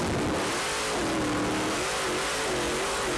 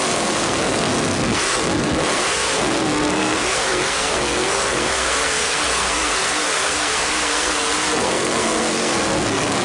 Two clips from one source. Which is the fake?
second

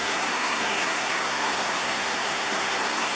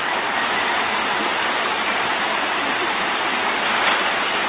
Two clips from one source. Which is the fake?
first